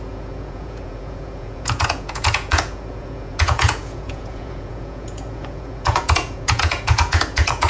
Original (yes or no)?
no